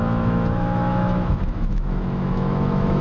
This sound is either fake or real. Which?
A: fake